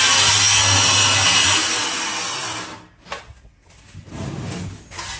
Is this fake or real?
real